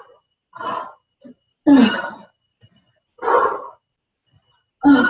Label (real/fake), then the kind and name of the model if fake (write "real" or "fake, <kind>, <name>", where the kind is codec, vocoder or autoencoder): real